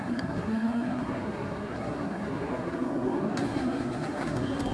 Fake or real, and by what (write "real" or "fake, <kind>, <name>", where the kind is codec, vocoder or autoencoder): fake, codec, SNAC